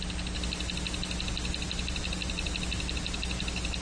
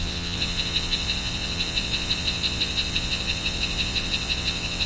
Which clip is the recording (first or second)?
first